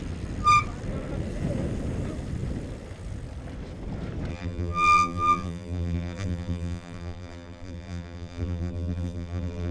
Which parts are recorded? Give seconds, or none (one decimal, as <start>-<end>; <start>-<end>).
0.0-4.3